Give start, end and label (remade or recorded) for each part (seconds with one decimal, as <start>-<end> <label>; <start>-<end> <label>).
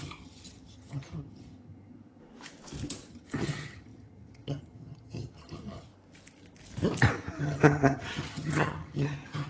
0.0-2.2 remade; 2.2-3.1 recorded; 3.1-5.9 remade; 5.9-7.4 recorded; 7.4-9.5 remade